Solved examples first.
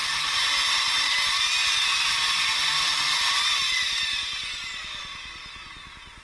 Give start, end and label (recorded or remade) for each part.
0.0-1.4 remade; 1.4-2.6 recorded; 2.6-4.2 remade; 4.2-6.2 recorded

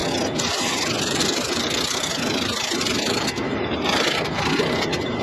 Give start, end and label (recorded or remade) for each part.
0.0-1.0 recorded; 1.0-5.2 remade

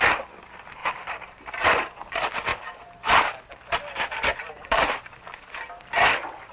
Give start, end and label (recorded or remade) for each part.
0.0-0.8 recorded; 0.8-2.1 remade; 2.1-2.5 recorded; 2.5-3.8 remade; 3.8-4.3 recorded; 4.3-5.8 remade; 5.8-6.5 recorded

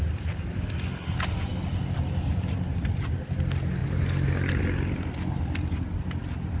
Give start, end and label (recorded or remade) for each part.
0.0-6.6 recorded